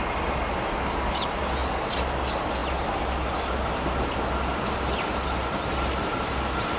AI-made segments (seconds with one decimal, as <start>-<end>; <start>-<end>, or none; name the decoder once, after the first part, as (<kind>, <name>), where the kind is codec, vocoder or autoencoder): 1.6-2.1 (vocoder, BigVGAN v2)